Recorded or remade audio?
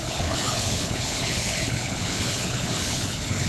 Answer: remade